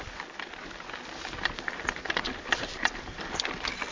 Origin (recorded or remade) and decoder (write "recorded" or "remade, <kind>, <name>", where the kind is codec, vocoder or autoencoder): recorded